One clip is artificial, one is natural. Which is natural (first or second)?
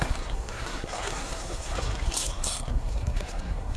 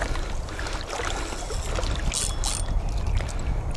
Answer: second